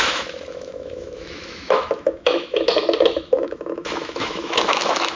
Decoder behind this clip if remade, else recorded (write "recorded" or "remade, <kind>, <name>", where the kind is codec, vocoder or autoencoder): remade, autoencoder, DAC-VAE